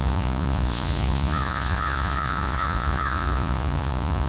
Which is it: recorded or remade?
remade